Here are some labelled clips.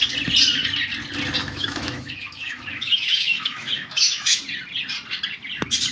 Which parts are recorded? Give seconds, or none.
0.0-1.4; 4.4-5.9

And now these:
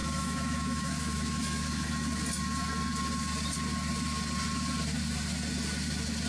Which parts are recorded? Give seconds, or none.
1.9-6.3

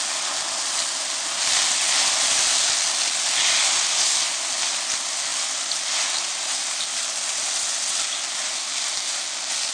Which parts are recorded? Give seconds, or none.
0.0-9.7

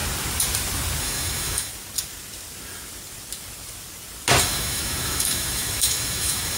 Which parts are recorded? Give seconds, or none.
0.0-1.0; 1.7-4.4

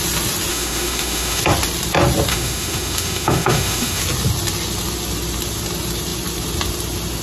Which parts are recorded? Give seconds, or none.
0.0-0.5; 1.4-2.3; 4.0-7.2

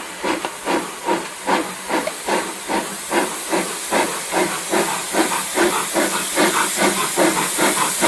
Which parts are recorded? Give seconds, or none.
0.0-8.1

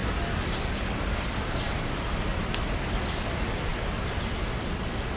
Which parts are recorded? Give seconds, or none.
0.0-5.2